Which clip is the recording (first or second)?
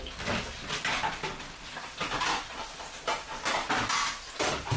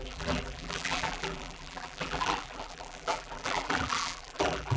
first